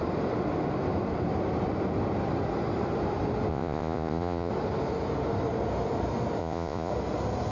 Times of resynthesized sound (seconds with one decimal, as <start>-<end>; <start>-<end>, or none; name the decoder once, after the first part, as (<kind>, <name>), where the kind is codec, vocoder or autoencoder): 3.5-4.5 (vocoder, Vocos); 6.4-6.9